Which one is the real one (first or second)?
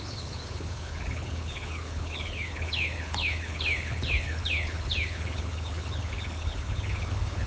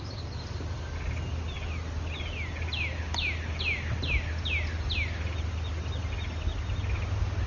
second